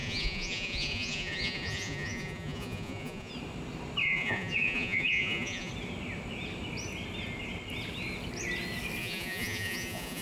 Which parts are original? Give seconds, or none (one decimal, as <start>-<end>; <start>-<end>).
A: 3.3-4.0; 5.7-9.0